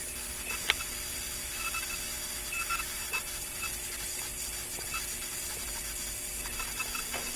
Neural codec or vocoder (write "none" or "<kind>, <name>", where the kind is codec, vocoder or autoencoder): none